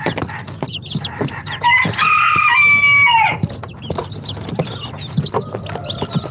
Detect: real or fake real